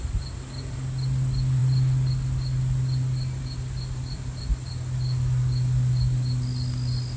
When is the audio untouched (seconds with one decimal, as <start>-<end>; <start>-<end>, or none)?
0.0-7.2